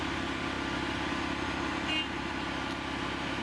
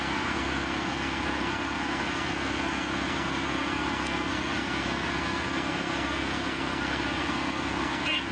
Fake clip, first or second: second